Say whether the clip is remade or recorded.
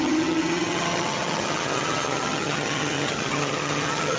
remade